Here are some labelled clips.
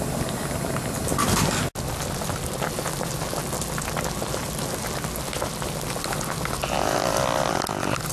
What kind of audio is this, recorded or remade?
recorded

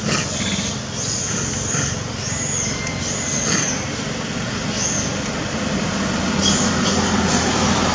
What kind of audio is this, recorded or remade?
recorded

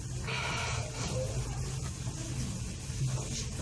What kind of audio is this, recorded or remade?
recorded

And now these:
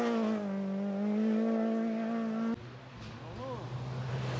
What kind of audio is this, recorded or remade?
recorded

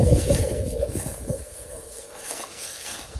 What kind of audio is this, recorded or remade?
remade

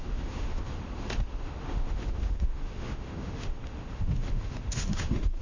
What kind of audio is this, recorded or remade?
remade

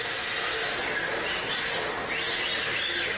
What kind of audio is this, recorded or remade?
recorded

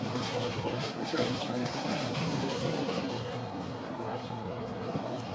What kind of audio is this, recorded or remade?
remade